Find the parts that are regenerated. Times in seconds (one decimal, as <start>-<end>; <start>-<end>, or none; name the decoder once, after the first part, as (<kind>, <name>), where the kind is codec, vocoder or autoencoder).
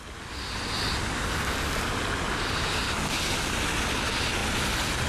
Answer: none